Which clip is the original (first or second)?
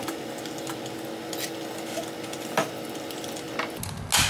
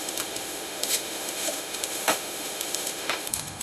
first